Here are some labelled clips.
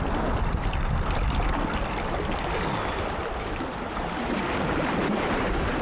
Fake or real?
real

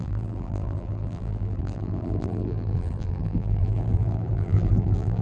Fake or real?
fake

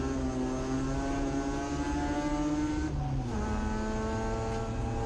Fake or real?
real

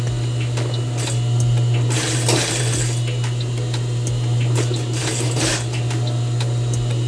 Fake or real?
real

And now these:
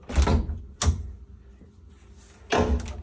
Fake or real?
real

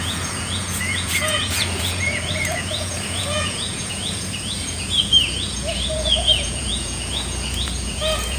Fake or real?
fake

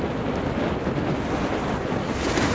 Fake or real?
real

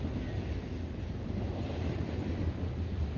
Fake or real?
real